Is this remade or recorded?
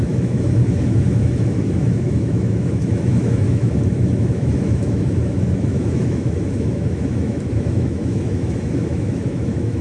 remade